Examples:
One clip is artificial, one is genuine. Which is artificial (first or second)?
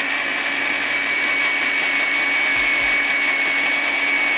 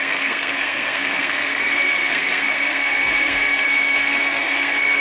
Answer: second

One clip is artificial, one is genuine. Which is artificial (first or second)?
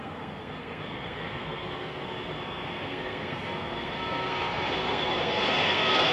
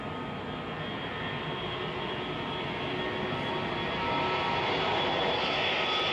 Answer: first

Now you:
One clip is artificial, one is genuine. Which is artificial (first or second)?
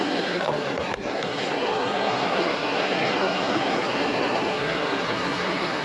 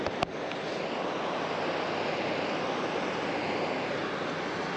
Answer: first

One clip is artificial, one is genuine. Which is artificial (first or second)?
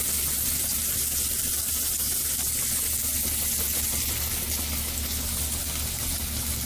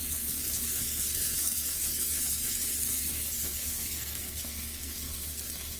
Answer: second